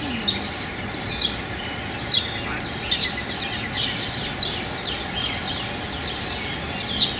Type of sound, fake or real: real